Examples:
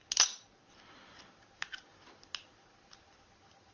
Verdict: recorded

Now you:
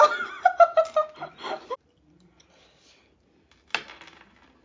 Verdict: recorded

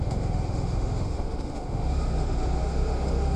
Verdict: remade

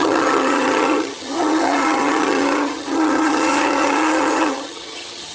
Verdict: remade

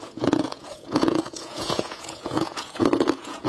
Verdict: remade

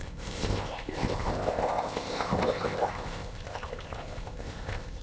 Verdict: remade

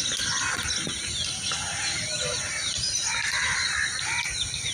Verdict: recorded